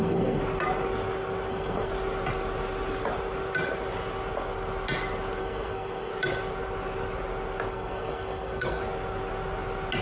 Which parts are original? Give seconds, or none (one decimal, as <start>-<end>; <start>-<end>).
0.4-1.5; 1.9-5.4; 6.1-7.7; 8.8-10.0